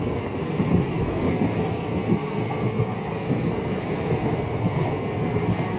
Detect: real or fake fake